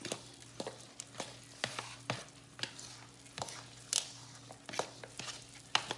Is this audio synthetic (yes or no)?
no